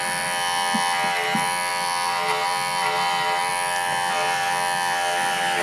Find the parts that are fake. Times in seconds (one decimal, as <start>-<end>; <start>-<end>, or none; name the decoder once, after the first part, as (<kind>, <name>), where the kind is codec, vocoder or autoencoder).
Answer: none